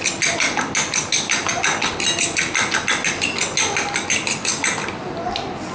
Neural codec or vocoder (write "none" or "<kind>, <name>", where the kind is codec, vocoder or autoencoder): none